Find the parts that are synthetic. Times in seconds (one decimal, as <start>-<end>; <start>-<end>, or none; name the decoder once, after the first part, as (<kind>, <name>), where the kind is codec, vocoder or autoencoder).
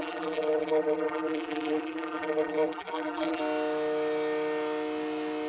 0.0-3.4 (vocoder, BigVGAN v2)